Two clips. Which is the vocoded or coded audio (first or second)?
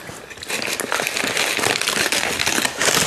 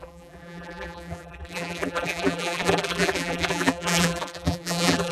second